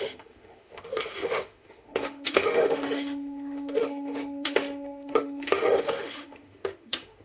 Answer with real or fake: fake